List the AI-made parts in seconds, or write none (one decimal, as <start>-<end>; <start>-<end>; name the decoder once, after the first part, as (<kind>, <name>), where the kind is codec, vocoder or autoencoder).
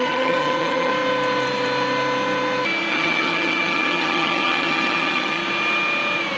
0.0-0.9 (vocoder, HiFi-GAN); 2.9-5.4